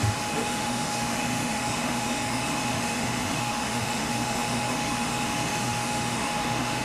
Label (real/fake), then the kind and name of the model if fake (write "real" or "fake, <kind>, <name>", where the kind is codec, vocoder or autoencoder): fake, autoencoder, DAC-VAE